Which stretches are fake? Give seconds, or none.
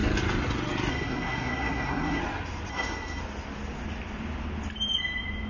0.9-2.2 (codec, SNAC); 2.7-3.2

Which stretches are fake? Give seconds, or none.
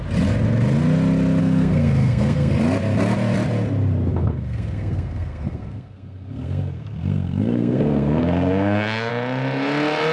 1.4-2.5 (codec, SNAC); 4.1-9.1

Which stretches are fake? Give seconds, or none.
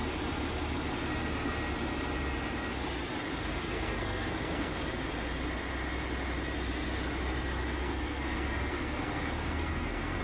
3.6-4.7 (codec, SNAC); 7.6-10.2